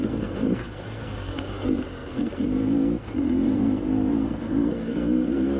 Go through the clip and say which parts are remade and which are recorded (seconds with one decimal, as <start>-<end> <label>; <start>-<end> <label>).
0.0-5.6 remade